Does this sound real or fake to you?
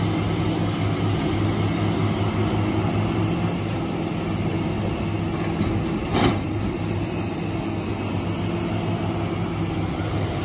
real